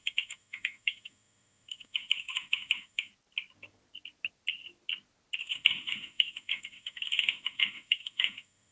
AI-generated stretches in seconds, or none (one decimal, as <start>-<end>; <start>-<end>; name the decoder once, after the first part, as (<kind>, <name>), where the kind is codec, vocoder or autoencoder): 0.0-3.1 (autoencoder, DAC-VAE); 5.4-8.7